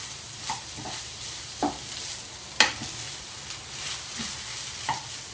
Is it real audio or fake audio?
real